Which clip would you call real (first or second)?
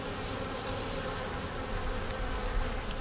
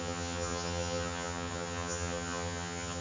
first